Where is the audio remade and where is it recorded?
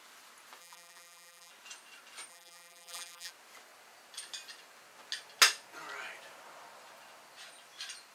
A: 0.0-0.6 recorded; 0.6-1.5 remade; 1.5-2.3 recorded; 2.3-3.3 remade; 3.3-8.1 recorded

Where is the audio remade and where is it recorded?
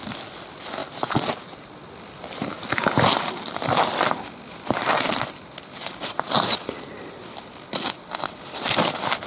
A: 0.0-9.3 recorded